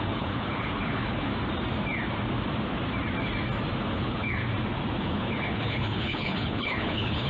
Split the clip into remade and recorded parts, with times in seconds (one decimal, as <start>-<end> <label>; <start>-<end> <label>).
0.0-1.3 remade; 1.3-3.8 recorded; 3.8-4.4 remade; 4.4-5.0 recorded; 5.0-7.3 remade